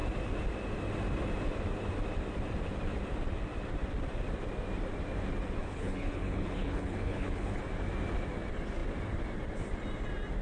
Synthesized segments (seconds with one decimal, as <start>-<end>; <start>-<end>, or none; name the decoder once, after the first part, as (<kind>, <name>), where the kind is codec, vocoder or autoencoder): 5.6-7.6 (codec, HILCodec)